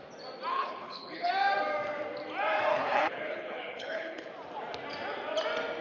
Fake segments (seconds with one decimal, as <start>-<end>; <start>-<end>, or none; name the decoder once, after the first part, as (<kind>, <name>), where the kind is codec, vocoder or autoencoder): 0.5-1.3 (codec, HILCodec); 2.7-4.3